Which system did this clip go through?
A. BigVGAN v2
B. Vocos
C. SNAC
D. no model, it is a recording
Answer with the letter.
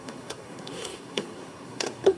C